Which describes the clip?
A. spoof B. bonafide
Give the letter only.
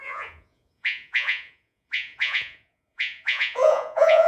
A